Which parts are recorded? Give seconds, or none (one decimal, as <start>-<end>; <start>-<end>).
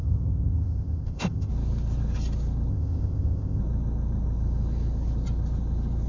1.5-2.7; 3.6-6.1